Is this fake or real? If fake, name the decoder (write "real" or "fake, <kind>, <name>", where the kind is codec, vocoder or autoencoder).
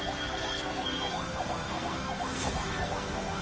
fake, codec, SNAC